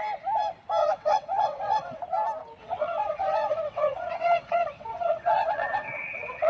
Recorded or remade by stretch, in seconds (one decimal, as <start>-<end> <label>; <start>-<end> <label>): 0.0-0.8 recorded; 0.8-2.0 remade; 2.0-2.6 recorded; 2.6-6.5 remade